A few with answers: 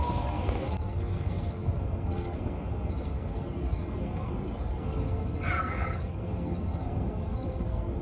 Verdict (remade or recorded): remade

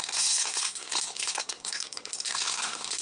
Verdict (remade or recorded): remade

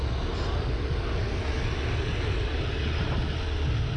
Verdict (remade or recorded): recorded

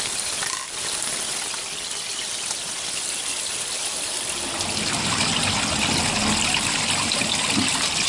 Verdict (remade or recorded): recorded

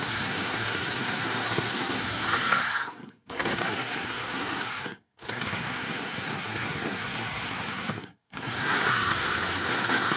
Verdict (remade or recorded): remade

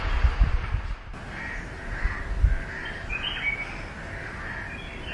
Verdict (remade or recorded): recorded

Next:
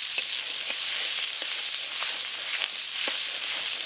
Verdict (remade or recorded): recorded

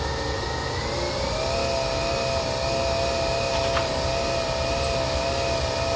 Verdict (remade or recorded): recorded